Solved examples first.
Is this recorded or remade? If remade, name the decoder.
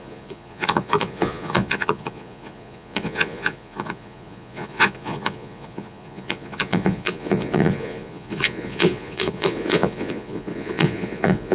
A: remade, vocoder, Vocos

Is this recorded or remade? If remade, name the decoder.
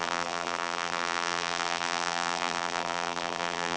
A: remade, vocoder, BigVGAN v2